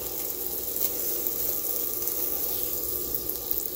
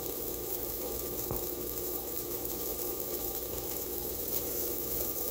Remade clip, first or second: second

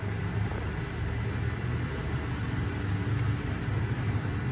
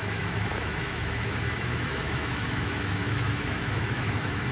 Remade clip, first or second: second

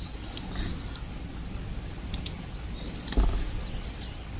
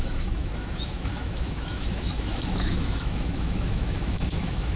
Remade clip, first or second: second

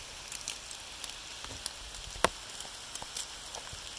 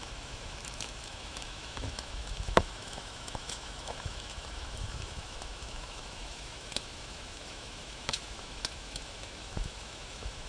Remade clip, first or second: second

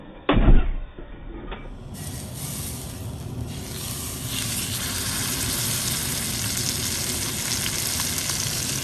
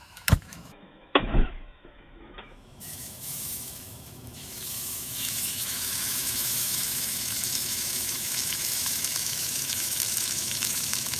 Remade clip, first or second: second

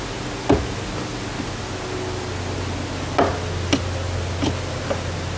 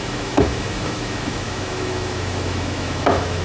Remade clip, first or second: second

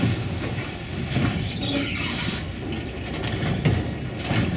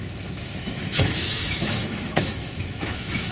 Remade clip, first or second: second